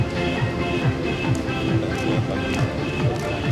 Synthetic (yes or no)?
no